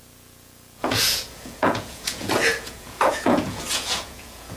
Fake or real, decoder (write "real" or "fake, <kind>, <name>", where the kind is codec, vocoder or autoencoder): fake, vocoder, Vocos